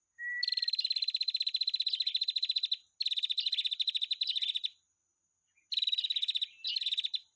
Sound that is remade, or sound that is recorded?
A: recorded